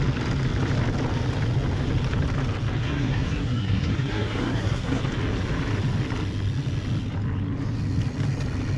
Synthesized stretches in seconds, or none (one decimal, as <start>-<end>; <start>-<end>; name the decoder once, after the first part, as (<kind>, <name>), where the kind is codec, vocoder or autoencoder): 2.8-5.0 (codec, SNAC)